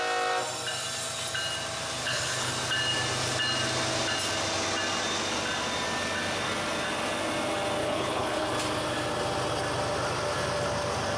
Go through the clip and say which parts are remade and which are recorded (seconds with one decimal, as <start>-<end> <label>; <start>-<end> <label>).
0.0-2.0 recorded; 2.0-2.5 remade; 2.5-7.8 recorded; 7.8-8.5 remade; 8.5-11.2 recorded